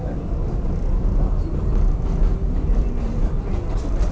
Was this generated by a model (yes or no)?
no